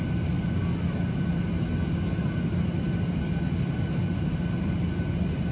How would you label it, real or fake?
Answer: real